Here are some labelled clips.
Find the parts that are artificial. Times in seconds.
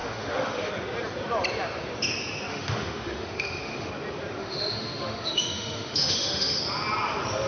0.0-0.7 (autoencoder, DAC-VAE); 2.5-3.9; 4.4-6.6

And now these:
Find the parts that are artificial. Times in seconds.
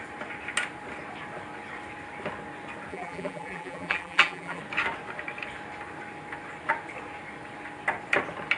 2.9-4.6 (vocoder, BigVGAN v2)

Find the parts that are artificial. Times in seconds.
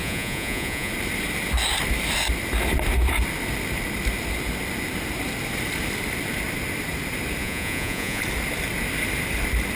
0.0-0.9 (vocoder, Vocos); 7.4-8.2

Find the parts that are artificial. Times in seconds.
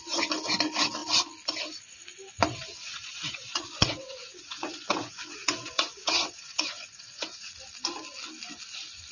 2.5-7.5 (vocoder, WaveNeXt)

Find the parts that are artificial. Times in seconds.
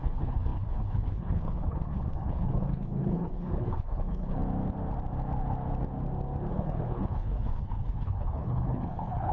0.0-4.4 (codec, HILCodec); 6.5-9.3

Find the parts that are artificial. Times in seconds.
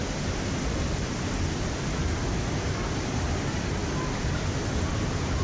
none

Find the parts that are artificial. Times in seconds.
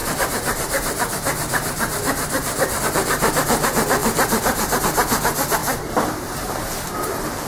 0.0-2.8 (vocoder, BigVGAN v2); 5.6-7.5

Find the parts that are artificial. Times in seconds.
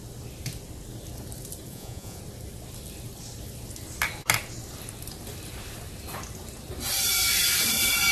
1.7-2.2 (vocoder, Vocos)